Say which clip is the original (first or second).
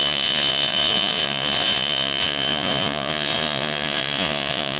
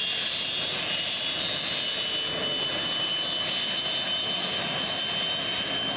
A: second